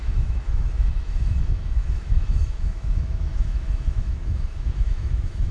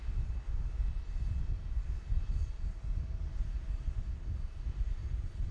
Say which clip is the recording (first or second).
second